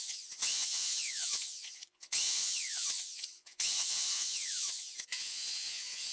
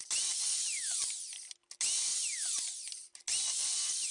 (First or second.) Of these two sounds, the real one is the second